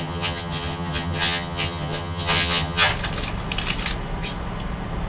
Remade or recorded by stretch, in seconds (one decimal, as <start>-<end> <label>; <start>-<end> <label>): 0.0-2.9 remade; 2.9-5.1 recorded